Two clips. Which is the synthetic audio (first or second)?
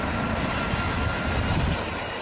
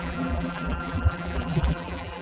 second